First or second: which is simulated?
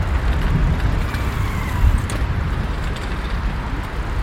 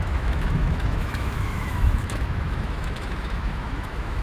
second